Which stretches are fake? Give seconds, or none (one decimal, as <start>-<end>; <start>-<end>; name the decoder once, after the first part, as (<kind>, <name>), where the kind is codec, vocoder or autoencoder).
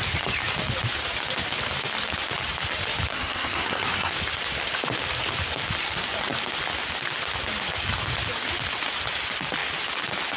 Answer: 3.1-4.1 (codec, SNAC)